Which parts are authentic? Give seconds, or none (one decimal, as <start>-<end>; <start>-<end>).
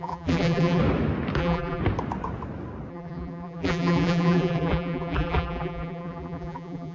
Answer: 0.8-1.4; 1.8-2.9